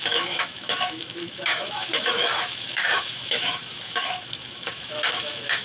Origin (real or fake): fake